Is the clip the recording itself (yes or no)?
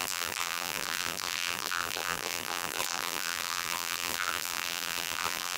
no